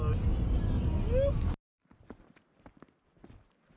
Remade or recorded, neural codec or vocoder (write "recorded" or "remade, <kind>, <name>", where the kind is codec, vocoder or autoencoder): recorded